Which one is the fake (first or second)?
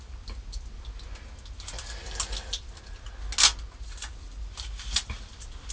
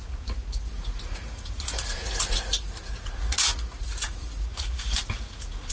second